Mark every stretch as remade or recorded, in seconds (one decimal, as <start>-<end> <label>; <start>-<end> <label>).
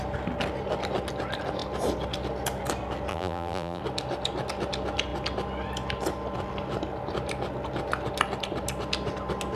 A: 0.0-3.1 recorded; 3.1-3.8 remade; 3.8-9.6 recorded